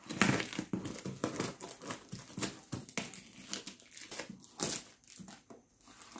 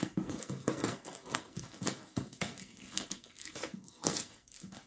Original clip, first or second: first